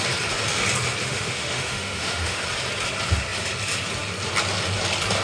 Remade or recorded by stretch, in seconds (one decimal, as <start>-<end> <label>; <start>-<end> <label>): 0.0-1.0 recorded; 1.0-2.4 remade; 2.4-5.2 recorded